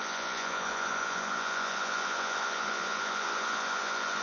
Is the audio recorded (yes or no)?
no